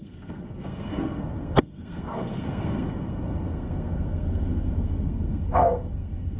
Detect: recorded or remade remade